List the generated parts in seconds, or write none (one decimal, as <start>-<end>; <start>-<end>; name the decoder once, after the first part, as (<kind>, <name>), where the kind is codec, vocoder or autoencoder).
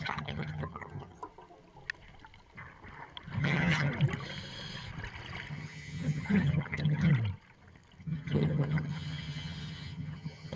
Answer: 0.0-1.2 (vocoder, HiFi-GAN); 3.4-3.9; 5.5-7.1; 8.0-10.6